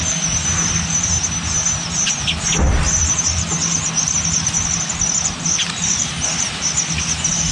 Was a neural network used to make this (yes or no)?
no